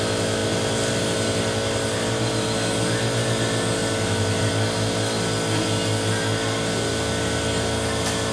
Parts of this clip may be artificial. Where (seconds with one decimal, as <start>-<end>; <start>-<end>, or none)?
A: 3.8-4.5